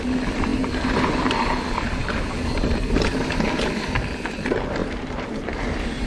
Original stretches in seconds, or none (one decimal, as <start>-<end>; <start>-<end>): 0.0-2.0; 3.3-4.8; 5.6-6.1